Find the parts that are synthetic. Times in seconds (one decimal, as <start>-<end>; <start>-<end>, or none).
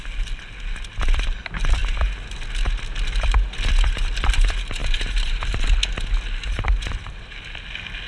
none